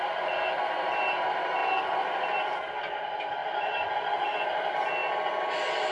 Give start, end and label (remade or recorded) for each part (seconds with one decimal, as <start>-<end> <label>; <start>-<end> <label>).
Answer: 0.0-5.9 recorded